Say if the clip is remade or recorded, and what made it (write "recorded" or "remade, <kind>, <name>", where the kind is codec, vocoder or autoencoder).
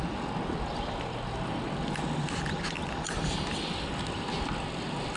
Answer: recorded